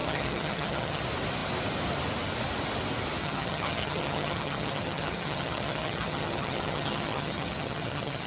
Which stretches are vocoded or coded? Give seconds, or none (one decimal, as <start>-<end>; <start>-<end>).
0.0-1.0; 3.2-8.3